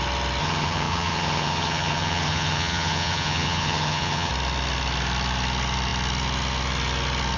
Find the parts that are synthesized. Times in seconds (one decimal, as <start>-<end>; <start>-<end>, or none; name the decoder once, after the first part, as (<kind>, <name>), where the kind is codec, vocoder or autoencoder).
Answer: 0.4-4.3 (vocoder, HiFi-GAN)

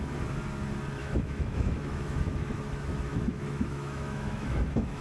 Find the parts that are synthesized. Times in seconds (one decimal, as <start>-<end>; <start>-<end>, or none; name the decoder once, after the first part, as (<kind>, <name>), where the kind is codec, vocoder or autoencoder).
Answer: 1.0-2.6 (autoencoder, DAC-VAE); 3.1-5.0

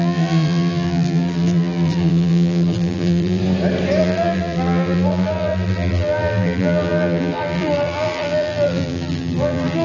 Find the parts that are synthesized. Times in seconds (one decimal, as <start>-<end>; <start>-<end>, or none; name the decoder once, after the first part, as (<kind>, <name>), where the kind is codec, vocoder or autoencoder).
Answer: 0.0-3.4 (vocoder, BigVGAN v2); 4.0-9.8

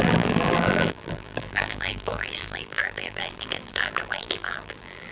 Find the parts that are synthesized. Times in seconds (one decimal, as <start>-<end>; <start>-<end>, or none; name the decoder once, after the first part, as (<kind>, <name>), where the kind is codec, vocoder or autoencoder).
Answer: 0.0-5.1 (vocoder, BigVGAN v2)

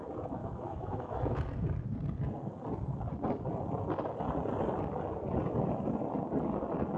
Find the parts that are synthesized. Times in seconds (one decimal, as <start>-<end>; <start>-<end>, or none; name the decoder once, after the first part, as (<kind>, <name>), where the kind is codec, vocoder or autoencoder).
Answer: 0.4-1.4 (autoencoder, DAC-VAE)